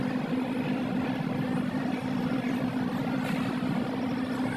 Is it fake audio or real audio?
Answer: real